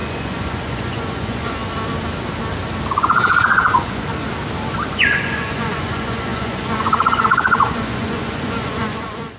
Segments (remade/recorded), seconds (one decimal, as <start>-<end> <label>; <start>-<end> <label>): 0.0-1.6 remade; 1.6-2.9 recorded; 2.9-4.1 remade; 4.1-4.9 recorded; 4.9-9.4 remade